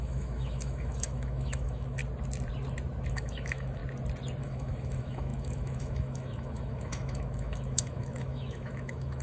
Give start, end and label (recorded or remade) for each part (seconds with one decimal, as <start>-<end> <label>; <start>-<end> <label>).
0.0-2.0 remade; 2.0-3.1 recorded; 3.1-3.8 remade; 3.8-4.4 recorded; 4.4-9.2 remade